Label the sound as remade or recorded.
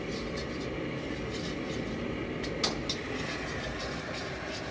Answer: recorded